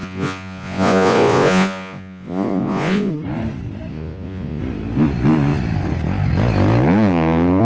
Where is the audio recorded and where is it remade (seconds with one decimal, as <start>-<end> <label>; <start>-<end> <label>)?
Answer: 0.0-3.1 remade; 3.1-3.9 recorded; 3.9-4.6 remade; 4.6-7.6 recorded